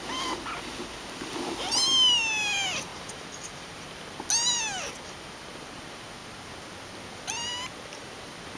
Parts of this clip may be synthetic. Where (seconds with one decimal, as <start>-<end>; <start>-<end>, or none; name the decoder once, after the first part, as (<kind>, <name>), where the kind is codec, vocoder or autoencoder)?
none